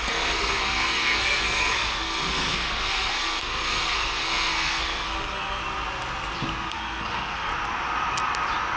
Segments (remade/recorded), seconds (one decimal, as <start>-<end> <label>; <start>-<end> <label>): 0.0-5.6 remade; 5.6-6.7 recorded; 6.7-7.5 remade; 7.5-8.8 recorded